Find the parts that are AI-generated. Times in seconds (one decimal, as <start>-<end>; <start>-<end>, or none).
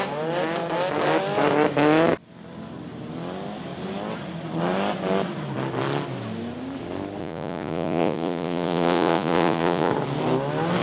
7.2-9.9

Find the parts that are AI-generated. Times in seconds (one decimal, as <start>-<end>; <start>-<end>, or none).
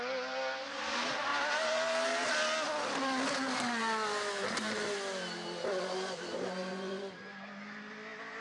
1.3-2.2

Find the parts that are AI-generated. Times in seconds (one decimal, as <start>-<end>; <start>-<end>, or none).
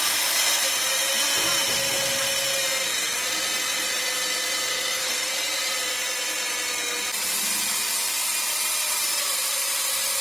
4.7-5.3